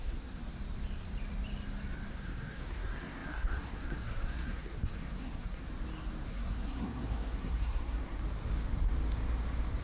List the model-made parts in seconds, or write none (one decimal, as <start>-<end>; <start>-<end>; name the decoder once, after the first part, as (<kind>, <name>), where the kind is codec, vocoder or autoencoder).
0.0-0.4 (codec, SNAC); 2.1-5.6; 6.3-8.2